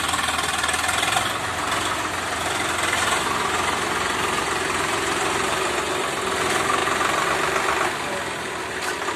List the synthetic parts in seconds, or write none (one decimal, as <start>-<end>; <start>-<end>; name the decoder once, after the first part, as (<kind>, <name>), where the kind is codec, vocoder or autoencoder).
none